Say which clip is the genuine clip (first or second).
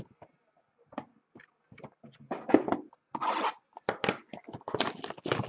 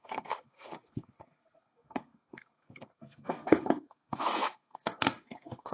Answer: first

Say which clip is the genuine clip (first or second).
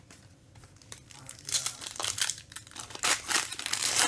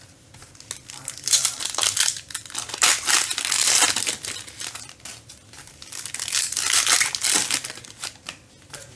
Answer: second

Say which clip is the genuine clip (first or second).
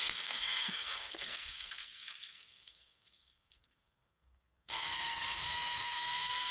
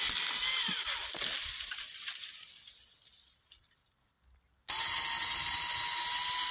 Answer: second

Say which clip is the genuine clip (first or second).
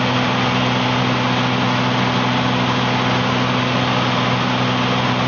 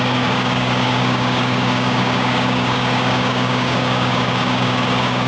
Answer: first